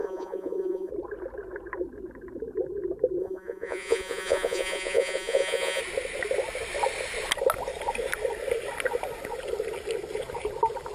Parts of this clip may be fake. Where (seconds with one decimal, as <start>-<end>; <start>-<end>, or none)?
0.0-0.9; 3.2-5.8